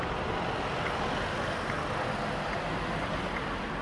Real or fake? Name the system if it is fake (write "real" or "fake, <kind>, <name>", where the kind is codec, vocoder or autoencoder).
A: real